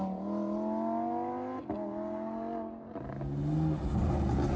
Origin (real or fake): real